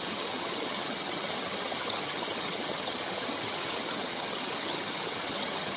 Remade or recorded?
remade